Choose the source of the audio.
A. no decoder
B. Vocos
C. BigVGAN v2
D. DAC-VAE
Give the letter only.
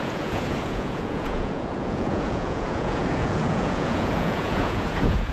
B